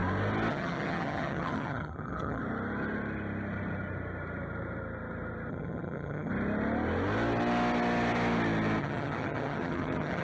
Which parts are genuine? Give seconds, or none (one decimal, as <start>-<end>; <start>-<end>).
0.0-0.5; 2.4-5.5; 6.3-8.8